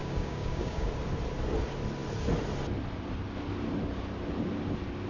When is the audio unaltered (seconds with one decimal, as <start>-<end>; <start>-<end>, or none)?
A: 0.9-5.1